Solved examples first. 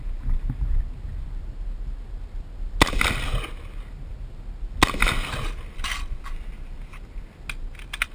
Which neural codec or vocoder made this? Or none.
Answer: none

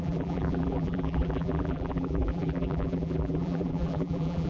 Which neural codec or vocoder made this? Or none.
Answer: vocoder, BigVGAN v2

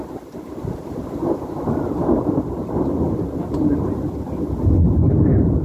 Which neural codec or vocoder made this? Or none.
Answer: vocoder, BigVGAN v2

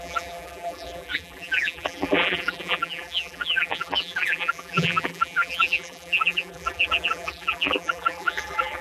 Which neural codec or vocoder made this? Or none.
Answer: vocoder, BigVGAN v2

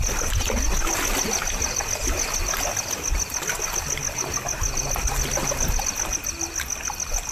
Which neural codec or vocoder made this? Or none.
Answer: none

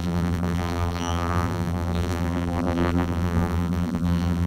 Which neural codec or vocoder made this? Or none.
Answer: vocoder, BigVGAN v2